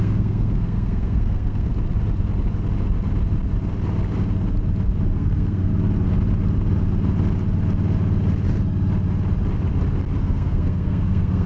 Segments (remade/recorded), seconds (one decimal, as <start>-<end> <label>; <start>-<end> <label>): 0.0-1.7 remade; 1.7-5.1 recorded; 5.1-5.7 remade; 5.7-10.2 recorded; 10.2-11.5 remade